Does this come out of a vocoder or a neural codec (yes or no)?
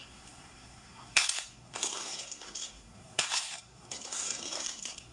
yes